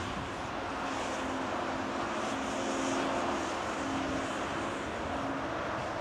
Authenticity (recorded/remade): recorded